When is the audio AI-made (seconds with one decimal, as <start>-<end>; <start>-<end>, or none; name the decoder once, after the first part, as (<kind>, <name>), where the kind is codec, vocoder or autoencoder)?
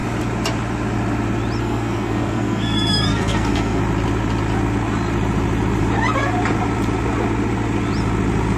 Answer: 1.6-3.8 (codec, SNAC)